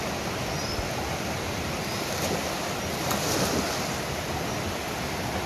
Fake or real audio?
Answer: real